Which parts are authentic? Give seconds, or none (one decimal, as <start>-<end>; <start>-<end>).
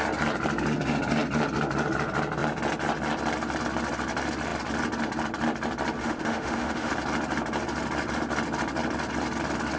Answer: 0.0-6.0; 6.9-9.8